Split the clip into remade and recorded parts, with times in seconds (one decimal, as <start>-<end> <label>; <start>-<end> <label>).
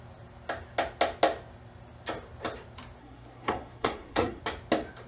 0.0-3.0 recorded; 3.0-4.4 remade; 4.4-5.1 recorded